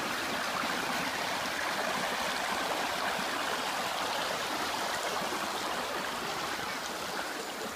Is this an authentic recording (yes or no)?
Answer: yes